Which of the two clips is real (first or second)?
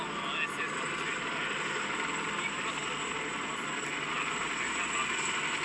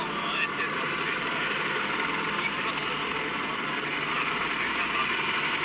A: first